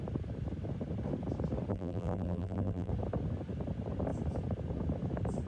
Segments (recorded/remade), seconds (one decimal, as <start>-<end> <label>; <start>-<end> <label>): 0.0-1.7 recorded; 1.7-2.9 remade; 2.9-5.5 recorded